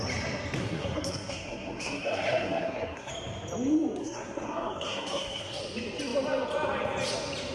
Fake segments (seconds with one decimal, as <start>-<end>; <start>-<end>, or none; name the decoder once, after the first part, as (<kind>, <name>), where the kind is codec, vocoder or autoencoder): 0.6-3.1 (codec, SNAC); 4.0-5.6